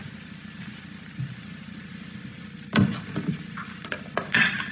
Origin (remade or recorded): recorded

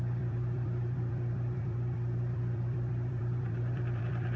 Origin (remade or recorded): remade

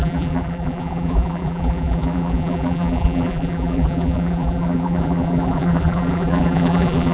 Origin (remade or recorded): remade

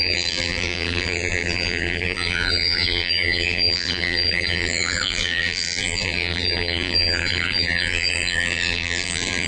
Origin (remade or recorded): remade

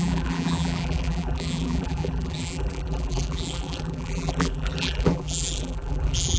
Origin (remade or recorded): remade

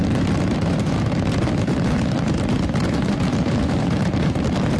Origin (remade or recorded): remade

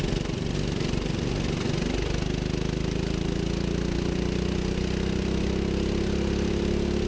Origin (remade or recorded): recorded